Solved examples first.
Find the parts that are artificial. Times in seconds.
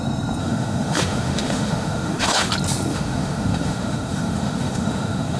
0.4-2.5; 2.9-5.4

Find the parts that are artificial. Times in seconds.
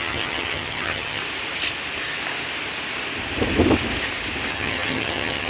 0.0-1.2; 4.5-5.5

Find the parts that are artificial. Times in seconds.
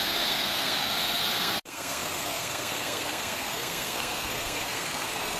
0.0-5.4